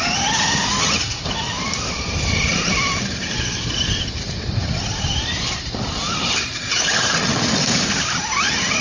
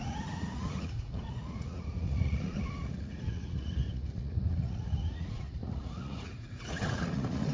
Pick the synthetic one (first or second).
second